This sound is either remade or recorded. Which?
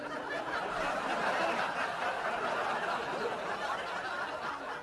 recorded